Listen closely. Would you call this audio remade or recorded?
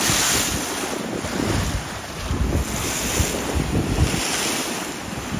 recorded